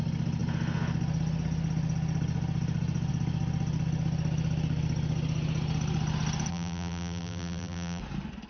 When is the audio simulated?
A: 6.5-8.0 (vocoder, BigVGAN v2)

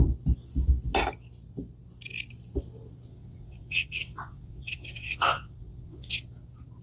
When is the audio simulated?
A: 3.1-6.1 (vocoder, WaveNeXt)

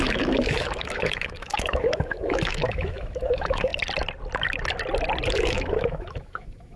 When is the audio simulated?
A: 0.0-3.7 (autoencoder, DAC-VAE); 5.3-6.8